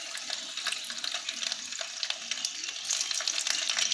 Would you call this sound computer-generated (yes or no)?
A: no